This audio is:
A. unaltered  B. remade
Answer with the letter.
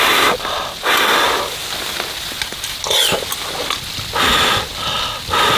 A